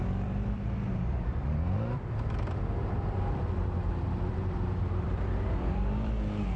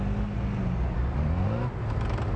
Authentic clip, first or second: second